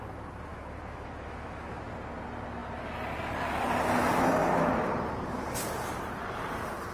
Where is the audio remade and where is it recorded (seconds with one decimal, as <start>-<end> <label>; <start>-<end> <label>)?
0.0-0.5 recorded; 0.5-1.8 remade; 1.8-4.4 recorded; 4.4-4.9 remade; 4.9-6.9 recorded